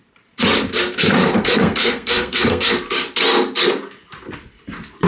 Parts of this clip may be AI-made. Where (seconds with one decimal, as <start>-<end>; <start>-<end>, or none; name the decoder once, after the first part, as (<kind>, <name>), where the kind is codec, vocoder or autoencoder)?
1.0-2.7 (codec, SNAC)